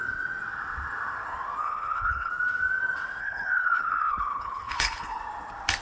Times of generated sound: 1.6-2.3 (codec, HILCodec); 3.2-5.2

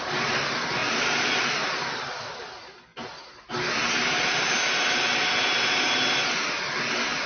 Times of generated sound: none

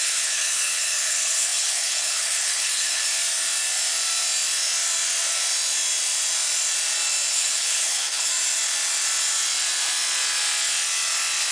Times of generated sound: 0.0-3.0 (codec, HILCodec); 7.3-8.3

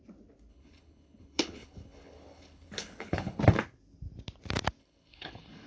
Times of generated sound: 0.5-3.4 (codec, HILCodec); 4.8-5.7

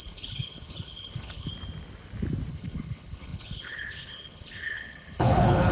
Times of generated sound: 0.0-1.5 (codec, HILCodec); 2.5-5.7

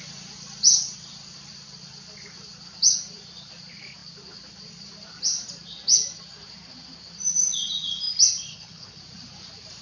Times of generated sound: 8.5-9.0 (codec, HILCodec)

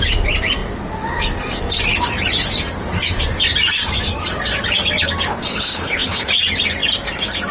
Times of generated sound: 5.3-6.3 (codec, HILCodec)